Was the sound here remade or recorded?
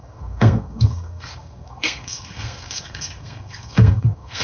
remade